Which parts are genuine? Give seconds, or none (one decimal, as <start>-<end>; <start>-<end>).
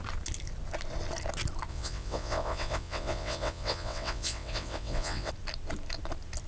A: 0.0-1.7; 5.3-6.5